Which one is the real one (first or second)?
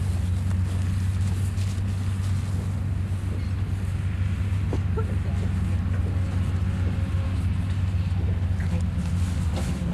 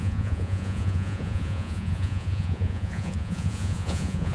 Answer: first